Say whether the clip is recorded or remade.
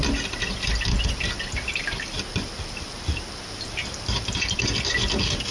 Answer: recorded